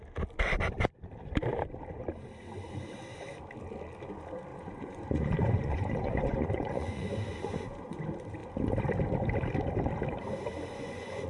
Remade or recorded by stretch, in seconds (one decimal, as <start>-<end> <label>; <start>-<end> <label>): 0.0-4.5 recorded; 4.5-8.0 remade; 8.0-10.7 recorded; 10.7-11.3 remade